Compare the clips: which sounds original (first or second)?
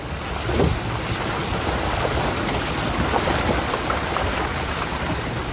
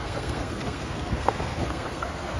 first